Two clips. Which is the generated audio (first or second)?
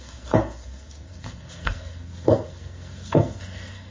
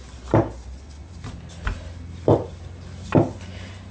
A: first